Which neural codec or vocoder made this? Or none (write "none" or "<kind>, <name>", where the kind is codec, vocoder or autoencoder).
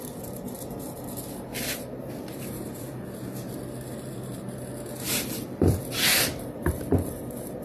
vocoder, BigVGAN v2